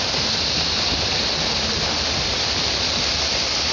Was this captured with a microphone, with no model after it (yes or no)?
yes